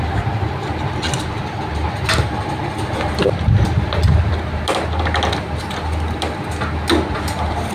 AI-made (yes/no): no